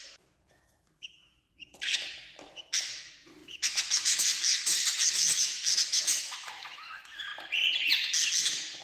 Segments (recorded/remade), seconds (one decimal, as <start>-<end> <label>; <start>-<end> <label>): 0.0-7.3 remade; 7.3-8.4 recorded; 8.4-8.8 remade